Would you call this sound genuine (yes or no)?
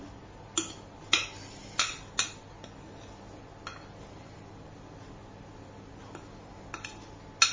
yes